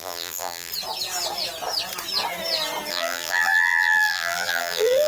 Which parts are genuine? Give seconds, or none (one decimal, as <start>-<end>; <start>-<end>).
0.7-2.9